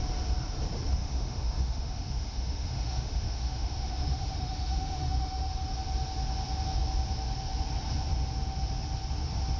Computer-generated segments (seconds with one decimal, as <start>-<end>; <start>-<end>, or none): 1.0-5.5